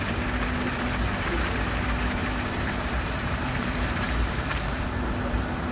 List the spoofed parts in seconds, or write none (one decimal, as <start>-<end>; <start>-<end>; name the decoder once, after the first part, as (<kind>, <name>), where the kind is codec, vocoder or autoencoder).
2.2-5.7 (vocoder, BigVGAN v2)